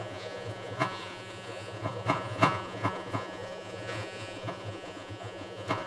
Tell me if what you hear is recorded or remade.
remade